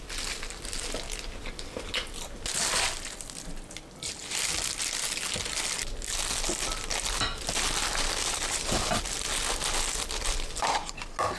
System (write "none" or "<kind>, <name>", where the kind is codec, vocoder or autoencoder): none